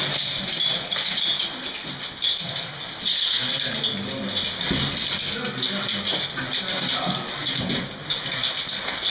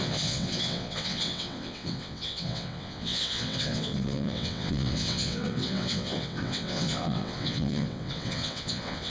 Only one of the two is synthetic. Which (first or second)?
second